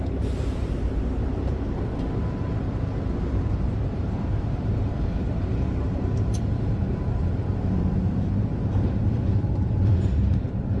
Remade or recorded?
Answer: remade